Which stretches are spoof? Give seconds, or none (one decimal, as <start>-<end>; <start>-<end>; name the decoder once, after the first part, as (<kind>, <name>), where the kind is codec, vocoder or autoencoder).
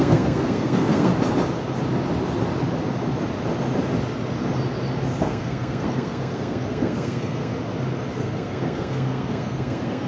0.0-1.1 (codec, SNAC); 5.2-7.5; 8.1-10.1